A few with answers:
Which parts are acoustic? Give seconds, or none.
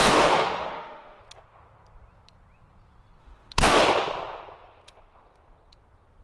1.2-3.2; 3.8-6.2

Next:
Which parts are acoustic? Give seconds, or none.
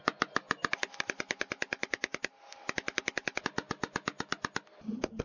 0.0-5.2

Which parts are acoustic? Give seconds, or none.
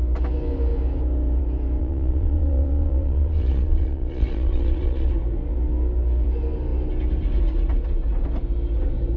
0.0-1.8; 5.1-9.2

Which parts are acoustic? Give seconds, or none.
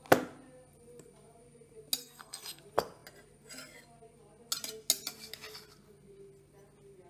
0.0-2.0; 2.6-7.1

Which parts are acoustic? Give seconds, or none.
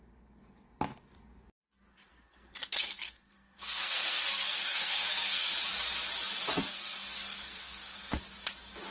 0.0-1.9; 5.5-6.7; 8.2-8.9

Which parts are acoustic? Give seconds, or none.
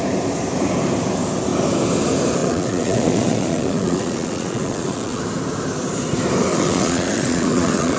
0.0-2.4; 5.2-6.5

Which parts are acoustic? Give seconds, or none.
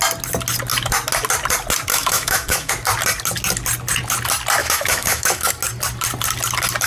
0.0-1.9; 2.7-4.6; 5.5-6.9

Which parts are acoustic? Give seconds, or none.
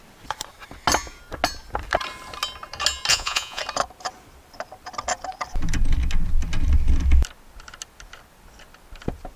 0.0-3.1; 3.6-9.4